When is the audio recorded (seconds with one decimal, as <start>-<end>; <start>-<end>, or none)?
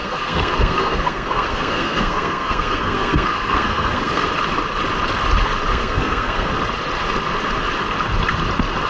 4.3-5.7; 6.5-8.9